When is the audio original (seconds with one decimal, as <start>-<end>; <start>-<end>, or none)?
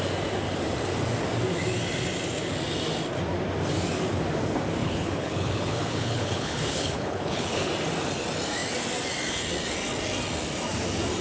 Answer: 0.0-4.8; 7.7-11.2